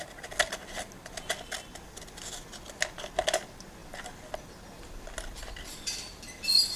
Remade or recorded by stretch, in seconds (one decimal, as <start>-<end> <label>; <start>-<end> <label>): 0.0-6.8 recorded